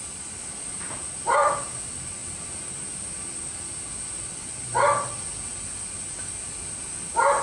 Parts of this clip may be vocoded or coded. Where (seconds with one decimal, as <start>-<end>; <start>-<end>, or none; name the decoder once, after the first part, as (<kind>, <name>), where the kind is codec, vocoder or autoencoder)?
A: none

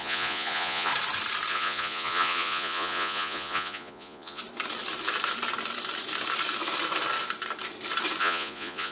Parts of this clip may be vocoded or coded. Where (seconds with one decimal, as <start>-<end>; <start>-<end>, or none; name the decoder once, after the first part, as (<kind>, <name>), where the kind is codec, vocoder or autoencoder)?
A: 0.0-0.9 (vocoder, Vocos); 1.5-4.4; 8.2-8.9

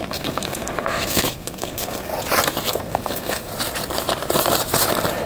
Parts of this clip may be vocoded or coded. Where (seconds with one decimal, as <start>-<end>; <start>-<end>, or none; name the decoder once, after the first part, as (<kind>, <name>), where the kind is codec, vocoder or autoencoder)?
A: 0.0-2.1 (codec, SNAC); 2.7-3.5

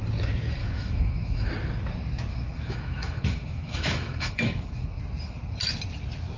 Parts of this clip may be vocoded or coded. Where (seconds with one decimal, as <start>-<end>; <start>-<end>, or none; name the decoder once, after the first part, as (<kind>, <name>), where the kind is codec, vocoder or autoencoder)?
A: 0.6-1.5 (autoencoder, DAC-VAE); 2.3-5.0